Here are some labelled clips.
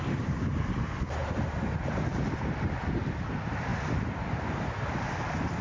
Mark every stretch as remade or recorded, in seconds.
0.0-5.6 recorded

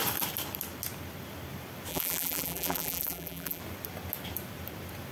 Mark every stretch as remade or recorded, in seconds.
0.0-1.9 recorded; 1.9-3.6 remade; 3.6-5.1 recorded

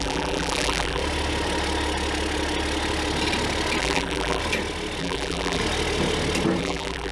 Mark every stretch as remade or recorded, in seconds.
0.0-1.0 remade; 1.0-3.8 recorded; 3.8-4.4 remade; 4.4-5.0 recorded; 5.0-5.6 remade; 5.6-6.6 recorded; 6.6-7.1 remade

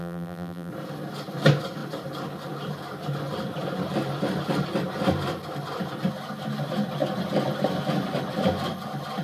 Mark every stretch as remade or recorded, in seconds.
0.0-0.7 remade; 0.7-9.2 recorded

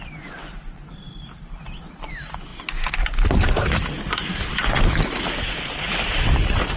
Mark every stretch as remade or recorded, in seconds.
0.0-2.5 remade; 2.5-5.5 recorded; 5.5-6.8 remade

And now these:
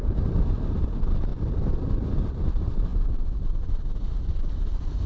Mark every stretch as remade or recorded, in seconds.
0.0-1.3 remade; 1.3-2.4 recorded; 2.4-5.1 remade